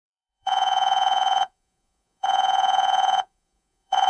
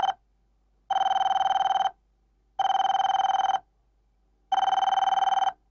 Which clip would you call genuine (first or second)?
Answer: second